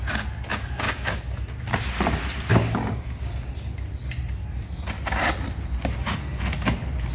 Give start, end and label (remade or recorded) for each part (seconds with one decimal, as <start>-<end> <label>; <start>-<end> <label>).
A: 0.0-0.5 recorded; 0.5-1.2 remade; 1.2-2.5 recorded; 2.5-3.5 remade; 3.5-7.1 recorded